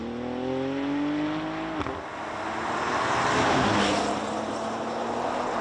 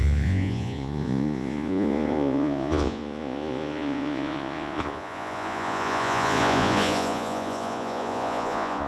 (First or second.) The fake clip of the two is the second